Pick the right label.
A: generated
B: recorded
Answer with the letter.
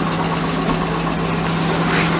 B